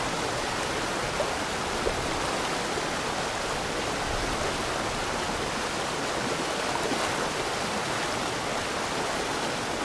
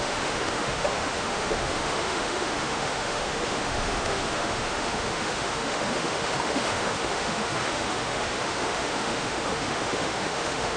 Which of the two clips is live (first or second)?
first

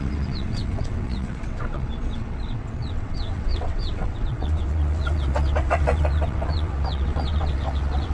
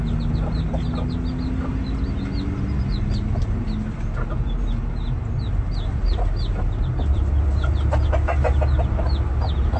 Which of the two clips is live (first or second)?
second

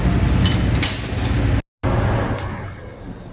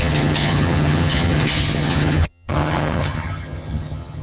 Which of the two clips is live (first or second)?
first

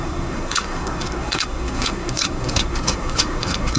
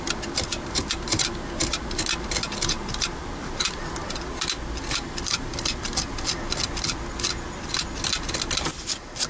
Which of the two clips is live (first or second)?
second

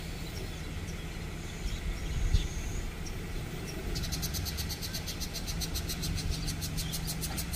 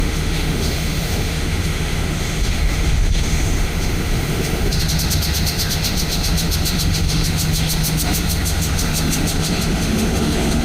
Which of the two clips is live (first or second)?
first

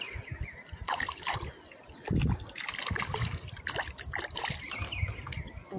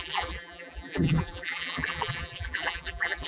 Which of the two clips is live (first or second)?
first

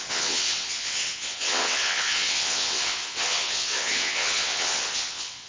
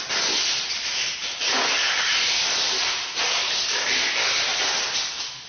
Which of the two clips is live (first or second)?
second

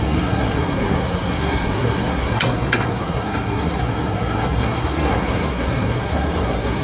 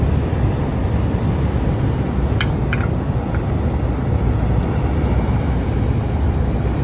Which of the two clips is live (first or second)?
second